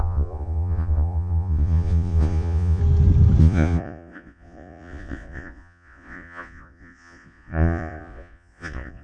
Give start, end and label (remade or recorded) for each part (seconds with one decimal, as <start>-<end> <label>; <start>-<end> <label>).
0.0-2.8 remade; 2.8-3.4 recorded; 3.4-9.0 remade